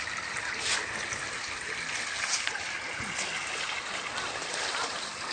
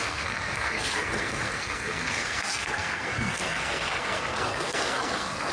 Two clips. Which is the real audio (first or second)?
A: first